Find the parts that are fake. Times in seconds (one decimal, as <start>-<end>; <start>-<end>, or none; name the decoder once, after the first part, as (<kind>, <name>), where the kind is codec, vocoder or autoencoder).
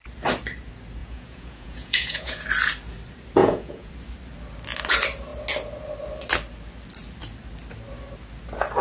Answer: 1.0-2.4 (vocoder, Vocos); 3.4-3.9